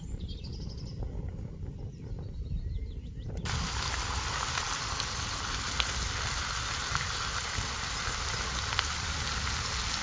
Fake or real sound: real